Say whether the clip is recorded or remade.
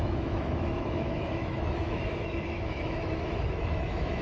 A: remade